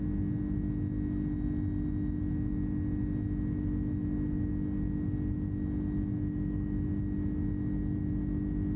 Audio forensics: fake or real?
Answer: real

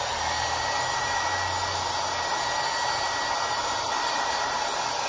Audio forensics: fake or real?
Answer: real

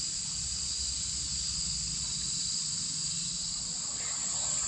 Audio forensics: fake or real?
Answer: real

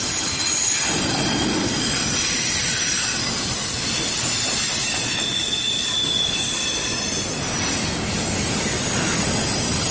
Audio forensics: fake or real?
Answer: real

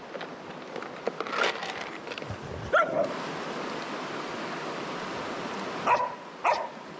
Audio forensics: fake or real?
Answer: real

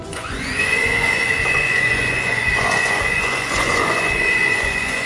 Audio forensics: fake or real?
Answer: fake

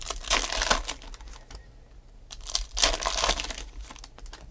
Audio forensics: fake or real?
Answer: real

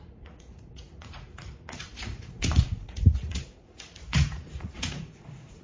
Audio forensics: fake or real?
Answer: fake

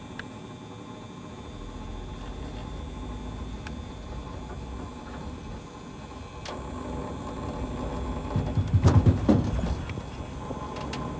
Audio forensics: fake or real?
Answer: real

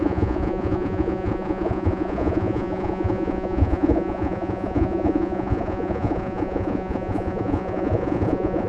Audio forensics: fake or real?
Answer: fake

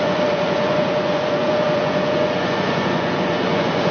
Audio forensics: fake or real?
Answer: fake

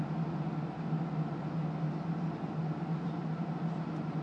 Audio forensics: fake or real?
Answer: real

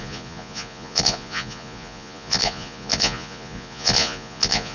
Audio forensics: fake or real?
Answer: fake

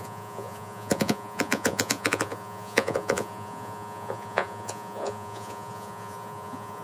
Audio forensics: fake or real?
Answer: fake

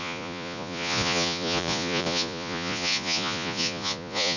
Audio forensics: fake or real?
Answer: fake